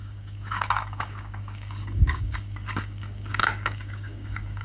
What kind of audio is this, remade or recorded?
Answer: remade